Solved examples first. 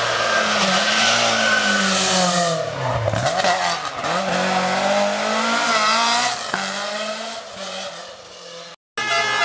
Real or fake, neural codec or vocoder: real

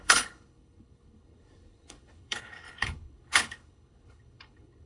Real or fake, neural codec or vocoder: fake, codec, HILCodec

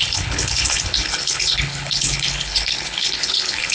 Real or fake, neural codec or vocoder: fake, codec, HILCodec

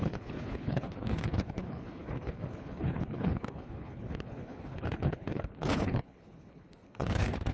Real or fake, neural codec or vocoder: fake, codec, HILCodec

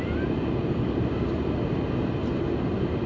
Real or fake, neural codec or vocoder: real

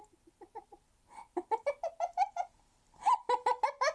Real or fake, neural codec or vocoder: real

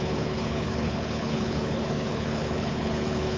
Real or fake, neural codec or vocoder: fake, codec, HILCodec